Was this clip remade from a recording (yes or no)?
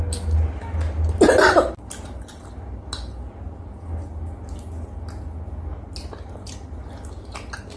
no